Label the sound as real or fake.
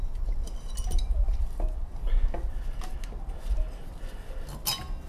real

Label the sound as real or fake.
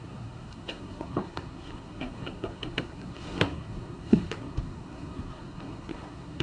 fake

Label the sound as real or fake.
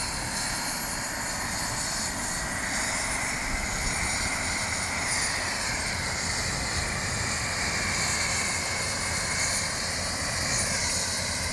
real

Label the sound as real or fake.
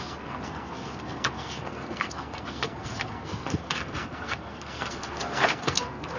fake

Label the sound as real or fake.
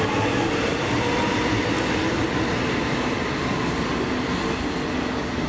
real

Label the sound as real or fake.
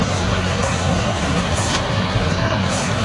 fake